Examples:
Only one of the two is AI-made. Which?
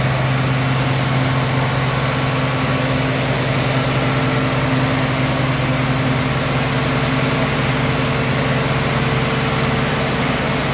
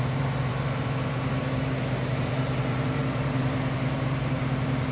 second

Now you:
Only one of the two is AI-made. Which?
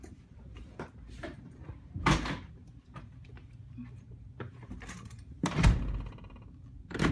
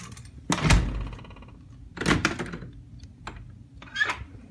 first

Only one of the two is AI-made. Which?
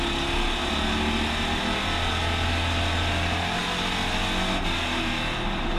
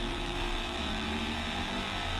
second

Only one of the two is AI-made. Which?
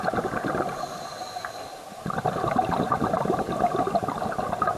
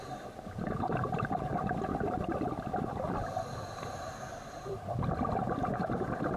second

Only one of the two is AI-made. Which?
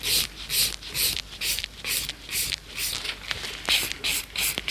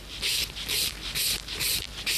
second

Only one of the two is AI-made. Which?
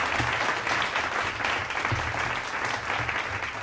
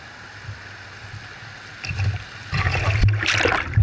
second